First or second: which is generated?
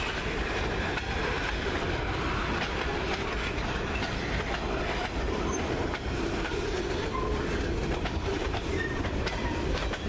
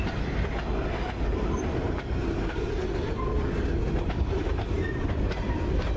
first